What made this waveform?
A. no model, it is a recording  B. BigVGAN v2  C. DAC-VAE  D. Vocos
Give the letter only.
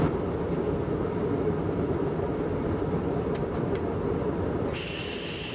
A